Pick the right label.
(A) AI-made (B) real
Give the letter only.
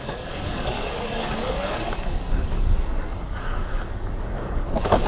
A